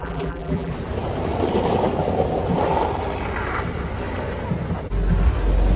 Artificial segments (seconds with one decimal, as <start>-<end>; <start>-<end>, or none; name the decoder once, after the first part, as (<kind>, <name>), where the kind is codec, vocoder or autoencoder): 0.0-0.7 (vocoder, BigVGAN v2)

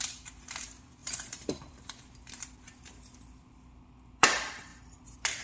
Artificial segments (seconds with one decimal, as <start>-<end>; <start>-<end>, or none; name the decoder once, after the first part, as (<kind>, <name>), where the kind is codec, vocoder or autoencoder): 0.0-4.7 (vocoder, BigVGAN v2)

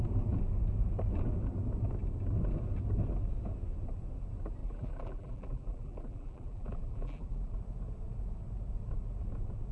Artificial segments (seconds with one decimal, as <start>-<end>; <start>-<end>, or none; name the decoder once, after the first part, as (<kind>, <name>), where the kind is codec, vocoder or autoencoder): 4.6-7.6 (vocoder, BigVGAN v2)

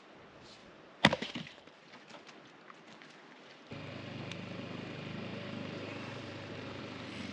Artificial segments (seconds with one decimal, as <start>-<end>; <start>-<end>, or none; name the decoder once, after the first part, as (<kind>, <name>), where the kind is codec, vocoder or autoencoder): 0.6-1.8 (vocoder, BigVGAN v2); 5.3-6.8

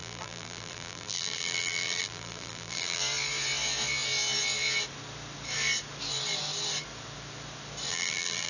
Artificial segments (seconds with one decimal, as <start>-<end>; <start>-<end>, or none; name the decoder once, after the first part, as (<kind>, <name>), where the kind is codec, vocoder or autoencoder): 0.0-3.0 (vocoder, BigVGAN v2); 7.9-8.5

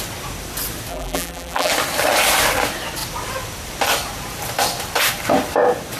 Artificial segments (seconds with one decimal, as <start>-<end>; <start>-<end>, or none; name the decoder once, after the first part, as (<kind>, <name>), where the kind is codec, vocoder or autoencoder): 0.9-1.7 (vocoder, BigVGAN v2)